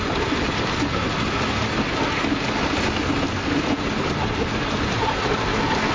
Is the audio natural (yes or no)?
yes